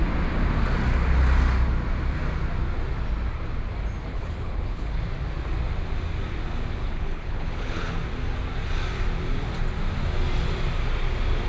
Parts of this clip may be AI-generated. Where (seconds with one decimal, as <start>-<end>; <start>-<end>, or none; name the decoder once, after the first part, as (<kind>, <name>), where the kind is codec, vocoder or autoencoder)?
4.1-5.0 (codec, HILCodec); 6.8-7.9